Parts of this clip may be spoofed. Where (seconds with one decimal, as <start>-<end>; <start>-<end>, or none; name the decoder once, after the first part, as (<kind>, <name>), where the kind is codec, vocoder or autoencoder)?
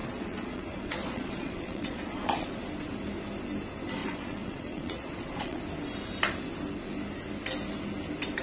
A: 0.0-2.6 (vocoder, Vocos); 4.0-5.6